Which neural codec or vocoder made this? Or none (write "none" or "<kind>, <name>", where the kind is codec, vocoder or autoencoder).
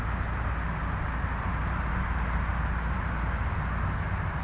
none